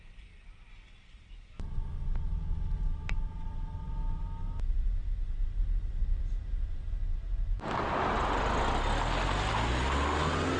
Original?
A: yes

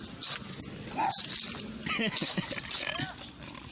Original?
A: yes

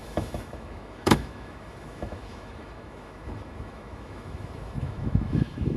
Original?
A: no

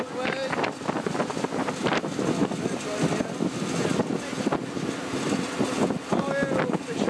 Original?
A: yes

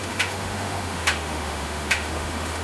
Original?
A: no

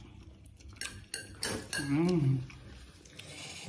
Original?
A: yes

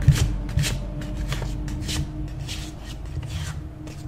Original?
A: yes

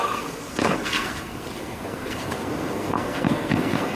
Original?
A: no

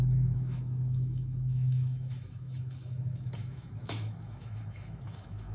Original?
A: no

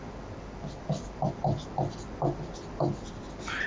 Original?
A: yes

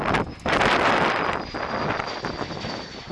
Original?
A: yes